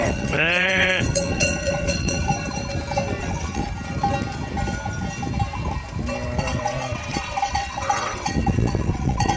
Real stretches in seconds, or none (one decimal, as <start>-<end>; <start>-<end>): 2.3-3.2; 3.6-6.4